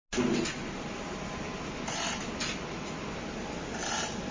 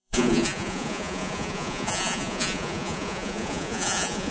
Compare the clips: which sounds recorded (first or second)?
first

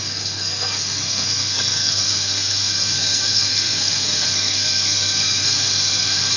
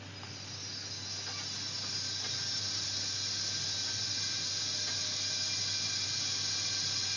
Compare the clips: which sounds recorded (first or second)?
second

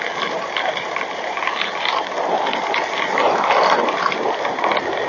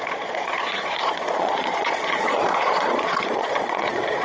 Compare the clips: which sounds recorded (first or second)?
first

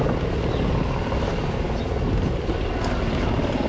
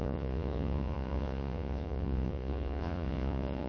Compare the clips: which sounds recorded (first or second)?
first